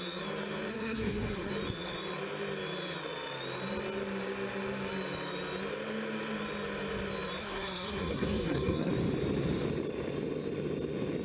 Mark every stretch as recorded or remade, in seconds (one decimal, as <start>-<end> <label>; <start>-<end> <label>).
0.0-0.7 recorded; 0.7-1.5 remade; 1.5-7.4 recorded; 7.4-8.9 remade; 8.9-11.2 recorded